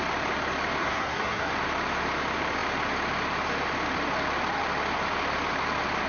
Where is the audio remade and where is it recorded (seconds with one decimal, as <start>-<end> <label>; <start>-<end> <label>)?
0.0-0.8 recorded; 0.8-1.5 remade; 1.5-6.1 recorded